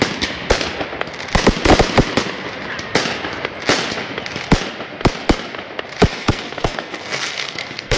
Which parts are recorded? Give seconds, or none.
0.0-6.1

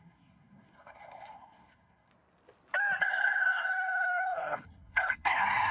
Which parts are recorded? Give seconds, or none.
2.1-3.0

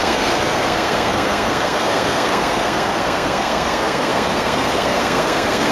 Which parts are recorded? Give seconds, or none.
none